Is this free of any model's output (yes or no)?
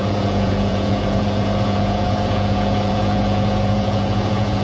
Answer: no